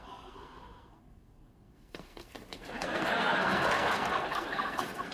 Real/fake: fake